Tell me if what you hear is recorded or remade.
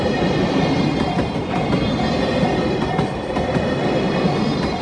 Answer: recorded